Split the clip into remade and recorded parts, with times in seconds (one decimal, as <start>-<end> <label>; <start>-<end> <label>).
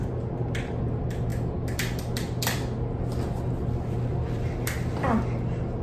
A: 0.0-5.8 recorded